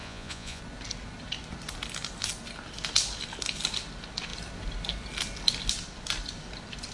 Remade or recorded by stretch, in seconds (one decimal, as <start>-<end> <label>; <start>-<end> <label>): 0.0-0.6 remade; 0.6-6.9 recorded